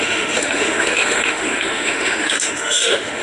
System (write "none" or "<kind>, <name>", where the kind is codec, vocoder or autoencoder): autoencoder, DAC-VAE